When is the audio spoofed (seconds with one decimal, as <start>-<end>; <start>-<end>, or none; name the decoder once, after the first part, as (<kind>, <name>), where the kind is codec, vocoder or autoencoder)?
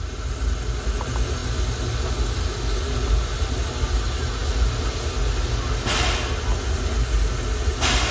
none